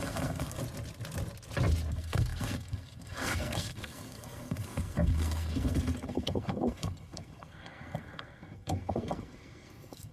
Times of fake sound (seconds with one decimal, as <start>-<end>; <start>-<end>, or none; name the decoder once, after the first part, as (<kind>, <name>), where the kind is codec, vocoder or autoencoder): 0.0-0.6 (codec, SNAC); 1.9-10.1